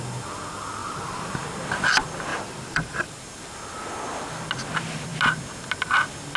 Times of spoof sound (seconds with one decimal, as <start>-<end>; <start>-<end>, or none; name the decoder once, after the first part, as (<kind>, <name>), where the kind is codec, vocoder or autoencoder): 0.8-1.3 (vocoder, BigVGAN v2); 2.3-3.1